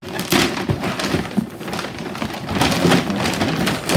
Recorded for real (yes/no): yes